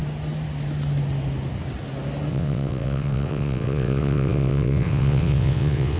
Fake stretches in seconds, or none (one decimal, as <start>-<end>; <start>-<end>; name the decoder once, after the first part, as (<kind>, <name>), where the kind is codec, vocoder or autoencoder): 2.3-6.0 (vocoder, WaveNeXt)